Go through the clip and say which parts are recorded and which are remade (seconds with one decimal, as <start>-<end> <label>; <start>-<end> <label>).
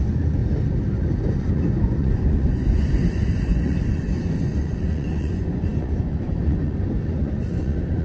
0.0-0.4 remade; 0.4-1.4 recorded; 1.4-8.0 remade